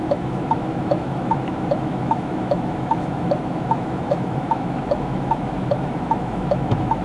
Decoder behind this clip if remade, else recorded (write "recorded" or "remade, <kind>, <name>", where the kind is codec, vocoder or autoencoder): remade, autoencoder, DAC-VAE